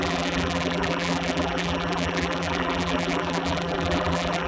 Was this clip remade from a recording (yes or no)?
yes